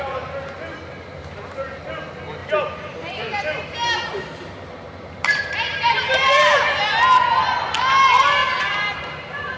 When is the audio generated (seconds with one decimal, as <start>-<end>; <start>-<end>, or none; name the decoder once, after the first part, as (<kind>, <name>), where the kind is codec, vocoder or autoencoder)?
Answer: 2.4-6.8 (vocoder, BigVGAN v2); 8.4-9.6